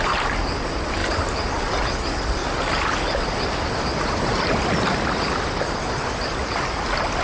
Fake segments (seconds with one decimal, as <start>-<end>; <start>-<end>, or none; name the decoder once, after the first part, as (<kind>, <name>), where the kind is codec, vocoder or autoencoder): none